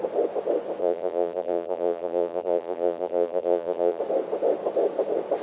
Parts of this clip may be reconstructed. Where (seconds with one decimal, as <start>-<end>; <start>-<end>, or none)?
0.8-4.0